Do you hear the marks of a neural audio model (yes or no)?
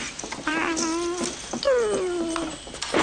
no